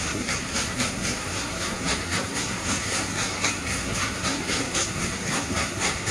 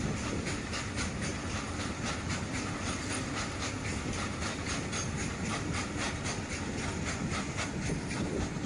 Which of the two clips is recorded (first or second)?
second